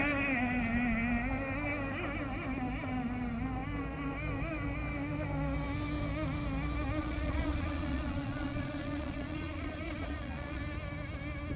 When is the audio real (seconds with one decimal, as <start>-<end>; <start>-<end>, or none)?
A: 0.0-7.0; 10.6-11.6